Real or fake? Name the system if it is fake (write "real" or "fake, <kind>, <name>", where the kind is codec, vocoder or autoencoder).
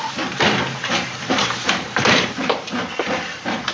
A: fake, vocoder, BigVGAN v2